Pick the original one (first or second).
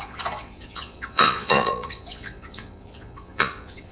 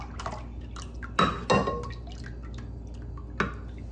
second